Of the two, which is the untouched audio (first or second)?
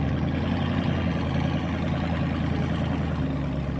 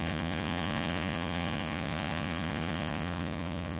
first